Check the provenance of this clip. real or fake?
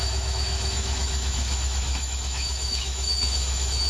fake